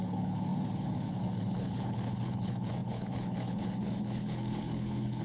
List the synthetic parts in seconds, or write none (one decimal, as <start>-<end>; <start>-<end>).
0.0-5.2